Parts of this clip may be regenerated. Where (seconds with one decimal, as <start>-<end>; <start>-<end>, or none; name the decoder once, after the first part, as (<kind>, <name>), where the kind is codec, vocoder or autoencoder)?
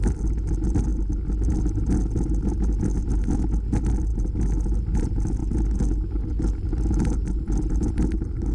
none